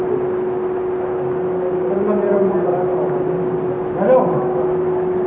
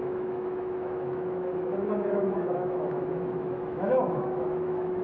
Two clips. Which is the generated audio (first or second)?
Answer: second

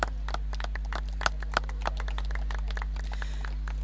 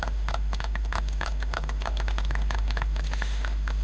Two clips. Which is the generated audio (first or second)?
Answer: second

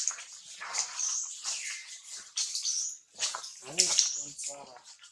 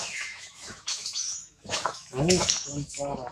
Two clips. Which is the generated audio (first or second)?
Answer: second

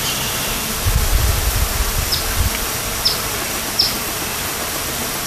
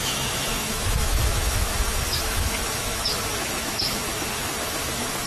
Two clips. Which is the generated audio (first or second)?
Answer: second